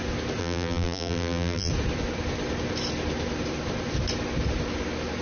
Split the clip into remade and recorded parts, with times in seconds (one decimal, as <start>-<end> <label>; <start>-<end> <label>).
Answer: 0.0-0.4 recorded; 0.4-1.7 remade; 1.7-5.2 recorded